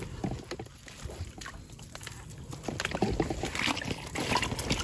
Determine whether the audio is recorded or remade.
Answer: recorded